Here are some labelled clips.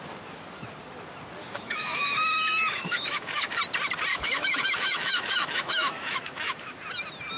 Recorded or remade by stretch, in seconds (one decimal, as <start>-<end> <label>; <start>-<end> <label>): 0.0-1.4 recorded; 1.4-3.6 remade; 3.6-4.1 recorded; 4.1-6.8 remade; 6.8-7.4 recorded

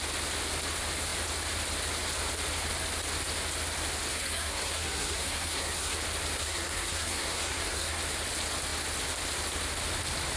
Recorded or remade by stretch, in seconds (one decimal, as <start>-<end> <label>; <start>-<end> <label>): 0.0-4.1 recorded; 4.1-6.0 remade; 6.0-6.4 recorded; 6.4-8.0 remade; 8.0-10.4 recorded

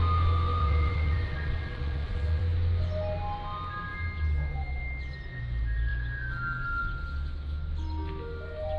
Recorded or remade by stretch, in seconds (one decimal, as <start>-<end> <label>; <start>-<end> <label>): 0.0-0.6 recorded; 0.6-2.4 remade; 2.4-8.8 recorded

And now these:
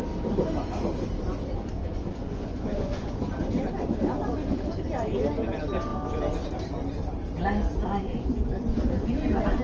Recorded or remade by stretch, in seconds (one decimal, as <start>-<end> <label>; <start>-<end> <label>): 0.0-1.8 recorded; 1.8-3.1 remade; 3.1-8.1 recorded; 8.1-9.6 remade

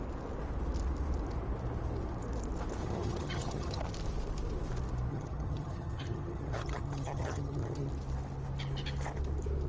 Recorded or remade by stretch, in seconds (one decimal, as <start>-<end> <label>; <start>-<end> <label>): 0.0-2.8 recorded; 2.8-3.8 remade; 3.8-5.1 recorded; 5.1-7.9 remade; 7.9-9.7 recorded

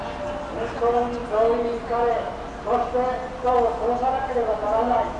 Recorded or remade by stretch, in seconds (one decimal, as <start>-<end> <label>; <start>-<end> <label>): 0.0-5.2 recorded

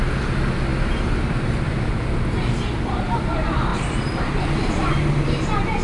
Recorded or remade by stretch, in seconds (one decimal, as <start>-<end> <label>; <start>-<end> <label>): 0.0-3.7 recorded; 3.7-4.9 remade; 4.9-5.8 recorded